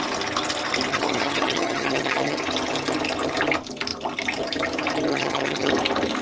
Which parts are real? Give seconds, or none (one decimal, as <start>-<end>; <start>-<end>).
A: 0.0-0.9; 2.4-5.1; 5.7-6.2